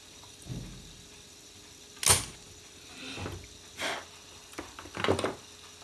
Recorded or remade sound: recorded